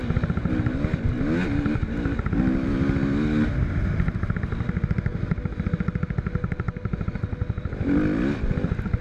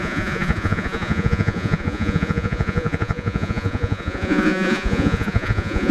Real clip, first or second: first